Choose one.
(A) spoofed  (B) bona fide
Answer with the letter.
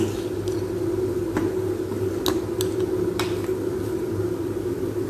B